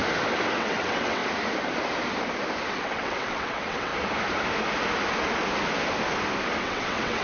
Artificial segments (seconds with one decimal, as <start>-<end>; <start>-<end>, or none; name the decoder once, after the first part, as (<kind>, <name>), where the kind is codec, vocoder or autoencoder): 0.6-1.2 (vocoder, WaveNeXt); 2.7-3.9; 6.6-7.2